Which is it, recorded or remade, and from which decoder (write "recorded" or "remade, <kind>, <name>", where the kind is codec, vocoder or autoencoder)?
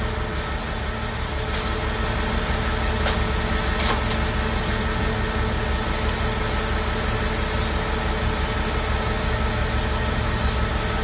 recorded